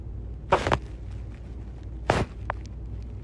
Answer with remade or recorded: recorded